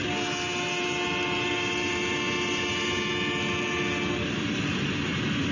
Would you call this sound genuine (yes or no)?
yes